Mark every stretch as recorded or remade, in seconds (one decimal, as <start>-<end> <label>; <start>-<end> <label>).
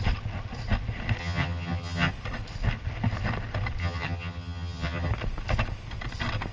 0.0-1.2 recorded; 1.2-2.1 remade; 2.1-3.8 recorded; 3.8-5.1 remade; 5.1-6.5 recorded